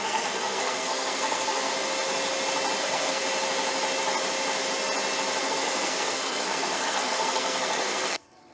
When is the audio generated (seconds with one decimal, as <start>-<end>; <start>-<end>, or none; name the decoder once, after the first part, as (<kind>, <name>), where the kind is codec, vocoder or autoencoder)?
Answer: 0.0-1.7 (codec, SNAC); 2.8-3.2; 5.4-8.5